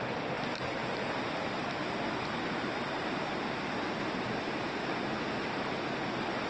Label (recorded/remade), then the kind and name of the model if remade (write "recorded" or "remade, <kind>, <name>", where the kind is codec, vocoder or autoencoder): remade, vocoder, BigVGAN v2